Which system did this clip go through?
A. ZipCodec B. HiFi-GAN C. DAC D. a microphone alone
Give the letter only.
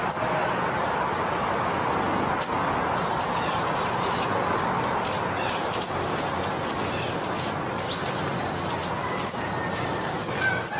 D